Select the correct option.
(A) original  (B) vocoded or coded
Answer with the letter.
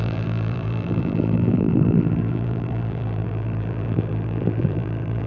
B